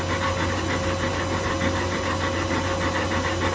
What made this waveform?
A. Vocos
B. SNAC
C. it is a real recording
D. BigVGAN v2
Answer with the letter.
C